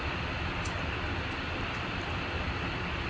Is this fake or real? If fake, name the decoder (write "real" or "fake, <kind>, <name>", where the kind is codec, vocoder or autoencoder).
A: real